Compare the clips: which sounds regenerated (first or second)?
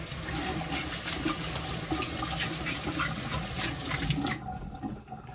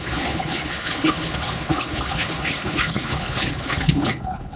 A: second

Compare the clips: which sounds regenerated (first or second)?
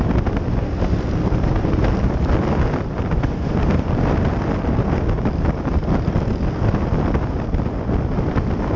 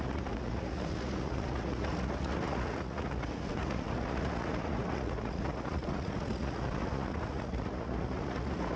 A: second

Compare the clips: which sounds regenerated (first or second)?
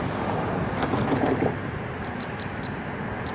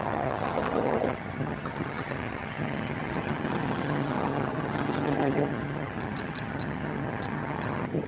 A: second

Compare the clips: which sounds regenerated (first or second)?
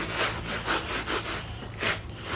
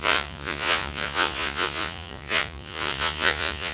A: second